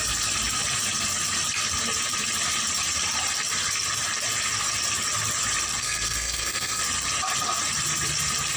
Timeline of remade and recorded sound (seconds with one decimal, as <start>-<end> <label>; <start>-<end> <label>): 0.0-5.8 recorded; 5.8-6.8 remade; 6.8-8.6 recorded

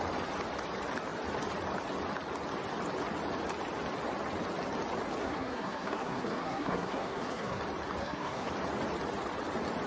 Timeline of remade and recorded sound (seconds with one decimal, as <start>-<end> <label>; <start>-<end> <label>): 0.0-5.2 recorded; 5.2-7.6 remade; 7.6-8.0 recorded; 8.0-8.5 remade; 8.5-9.9 recorded

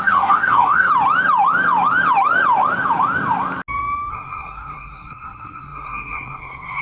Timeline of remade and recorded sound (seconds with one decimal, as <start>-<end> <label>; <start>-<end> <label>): 0.0-0.9 remade; 0.9-4.1 recorded; 4.1-6.8 remade

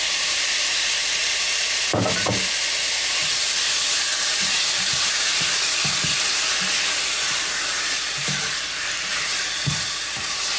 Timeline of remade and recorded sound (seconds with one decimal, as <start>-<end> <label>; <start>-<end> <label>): 0.0-10.6 remade